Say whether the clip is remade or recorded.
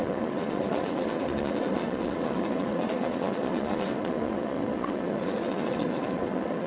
remade